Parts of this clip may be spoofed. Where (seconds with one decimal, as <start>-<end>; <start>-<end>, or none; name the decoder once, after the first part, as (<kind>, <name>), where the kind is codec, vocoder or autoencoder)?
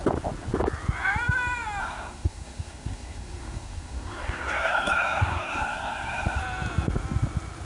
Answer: 1.8-6.4 (codec, SNAC)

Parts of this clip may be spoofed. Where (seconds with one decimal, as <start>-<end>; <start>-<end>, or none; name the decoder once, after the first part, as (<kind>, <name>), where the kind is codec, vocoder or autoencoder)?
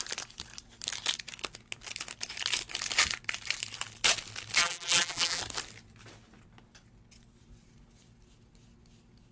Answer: 4.6-5.4 (vocoder, BigVGAN v2)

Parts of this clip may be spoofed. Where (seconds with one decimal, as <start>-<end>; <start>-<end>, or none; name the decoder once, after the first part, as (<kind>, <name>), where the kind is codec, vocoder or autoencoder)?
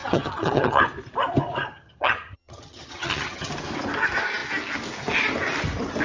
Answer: 0.0-0.8 (vocoder, HiFi-GAN); 1.7-3.5